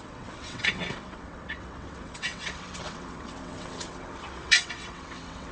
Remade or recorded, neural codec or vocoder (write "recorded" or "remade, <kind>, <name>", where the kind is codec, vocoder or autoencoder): remade, vocoder, WaveNeXt